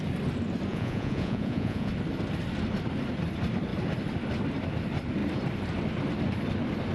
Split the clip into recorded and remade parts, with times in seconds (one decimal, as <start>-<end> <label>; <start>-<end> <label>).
0.0-0.7 recorded; 0.7-1.9 remade; 1.9-6.9 recorded